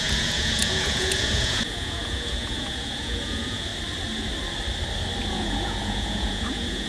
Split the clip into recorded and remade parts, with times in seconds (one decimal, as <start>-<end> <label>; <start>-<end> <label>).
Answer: 0.0-3.7 remade; 3.7-5.3 recorded; 5.3-6.9 remade